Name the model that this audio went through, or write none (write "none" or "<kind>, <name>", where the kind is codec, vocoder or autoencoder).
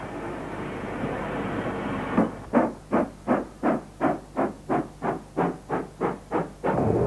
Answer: none